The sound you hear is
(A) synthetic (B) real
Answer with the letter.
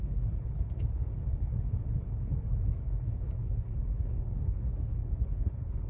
A